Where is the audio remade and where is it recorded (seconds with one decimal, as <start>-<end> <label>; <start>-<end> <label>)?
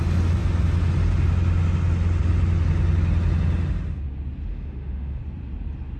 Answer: 0.0-4.5 recorded; 4.5-5.2 remade; 5.2-6.0 recorded